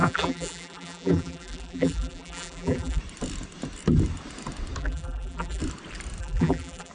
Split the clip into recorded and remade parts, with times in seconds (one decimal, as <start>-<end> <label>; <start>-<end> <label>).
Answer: 0.0-3.0 remade; 3.0-4.8 recorded; 4.8-5.6 remade; 5.6-6.2 recorded; 6.2-6.9 remade